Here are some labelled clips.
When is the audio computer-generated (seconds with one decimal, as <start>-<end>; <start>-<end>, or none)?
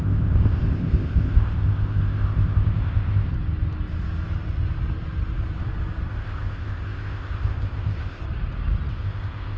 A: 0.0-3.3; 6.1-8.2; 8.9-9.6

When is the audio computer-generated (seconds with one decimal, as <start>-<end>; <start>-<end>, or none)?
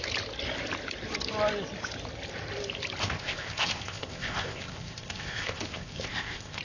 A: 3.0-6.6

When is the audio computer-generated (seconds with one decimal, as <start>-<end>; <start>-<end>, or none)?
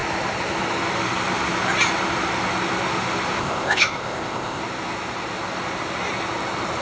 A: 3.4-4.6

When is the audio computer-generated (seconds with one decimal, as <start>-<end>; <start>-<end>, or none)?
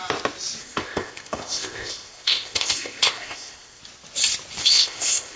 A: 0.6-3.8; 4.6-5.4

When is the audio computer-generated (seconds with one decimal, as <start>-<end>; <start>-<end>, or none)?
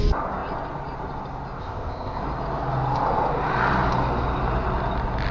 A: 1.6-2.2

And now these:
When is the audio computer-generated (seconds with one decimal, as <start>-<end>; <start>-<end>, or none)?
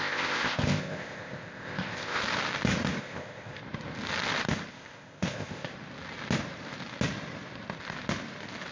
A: 0.0-2.2; 3.0-3.6; 4.7-5.7